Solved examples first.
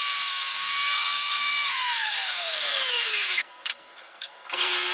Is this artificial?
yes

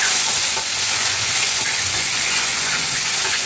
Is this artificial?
yes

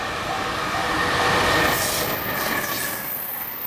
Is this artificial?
no